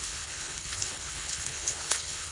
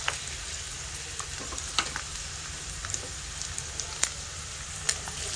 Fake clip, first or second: first